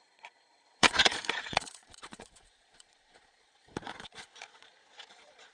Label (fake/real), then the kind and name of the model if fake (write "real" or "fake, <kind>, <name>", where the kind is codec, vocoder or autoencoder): fake, vocoder, Vocos